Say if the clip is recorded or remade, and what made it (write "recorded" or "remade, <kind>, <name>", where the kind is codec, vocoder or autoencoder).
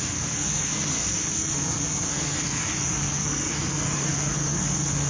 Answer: remade, codec, SNAC